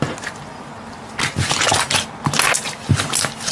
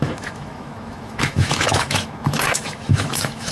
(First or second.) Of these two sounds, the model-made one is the second